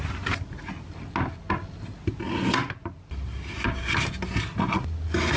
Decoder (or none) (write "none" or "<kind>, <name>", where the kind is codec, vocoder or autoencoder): none